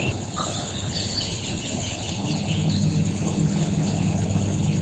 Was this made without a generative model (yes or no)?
no